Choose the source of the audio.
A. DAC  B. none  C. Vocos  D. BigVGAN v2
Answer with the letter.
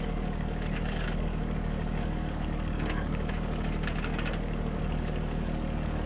A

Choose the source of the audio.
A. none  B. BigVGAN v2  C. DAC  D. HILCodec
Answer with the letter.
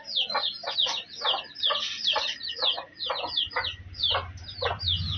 A